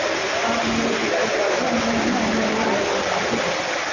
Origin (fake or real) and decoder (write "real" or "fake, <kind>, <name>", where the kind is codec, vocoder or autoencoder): real